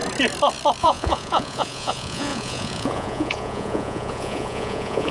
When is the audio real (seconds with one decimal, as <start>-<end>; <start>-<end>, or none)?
0.0-0.8